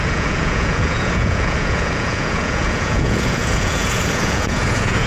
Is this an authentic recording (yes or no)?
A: no